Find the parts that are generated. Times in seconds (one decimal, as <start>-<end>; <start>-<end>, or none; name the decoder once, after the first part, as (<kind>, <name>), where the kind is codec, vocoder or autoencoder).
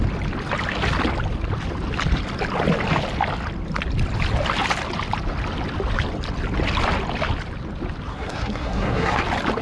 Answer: 8.1-9.2 (codec, SNAC)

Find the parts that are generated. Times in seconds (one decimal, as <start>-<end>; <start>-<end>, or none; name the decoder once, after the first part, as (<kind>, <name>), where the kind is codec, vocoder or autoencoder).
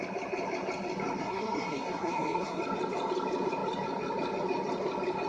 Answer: 1.2-2.6 (codec, SNAC)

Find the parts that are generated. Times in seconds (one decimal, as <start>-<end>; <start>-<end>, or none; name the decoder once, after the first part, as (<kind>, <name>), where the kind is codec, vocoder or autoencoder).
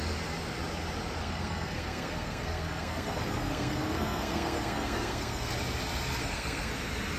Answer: 1.2-5.5 (codec, SNAC); 6.2-6.7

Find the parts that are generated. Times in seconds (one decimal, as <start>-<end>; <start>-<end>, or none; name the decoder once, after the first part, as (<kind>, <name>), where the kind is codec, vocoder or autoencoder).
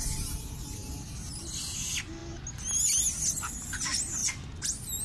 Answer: none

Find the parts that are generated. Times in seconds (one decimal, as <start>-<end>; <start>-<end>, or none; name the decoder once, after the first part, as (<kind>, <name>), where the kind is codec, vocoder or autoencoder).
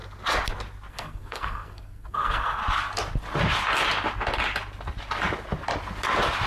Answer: 0.9-2.6 (codec, SNAC)